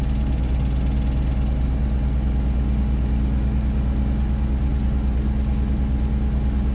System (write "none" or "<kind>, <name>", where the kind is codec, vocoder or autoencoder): none